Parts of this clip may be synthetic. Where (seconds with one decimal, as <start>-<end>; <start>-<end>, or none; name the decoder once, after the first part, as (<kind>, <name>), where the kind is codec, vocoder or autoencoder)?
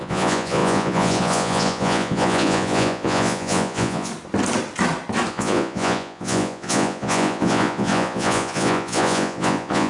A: 0.0-4.1 (vocoder, Vocos); 5.3-9.9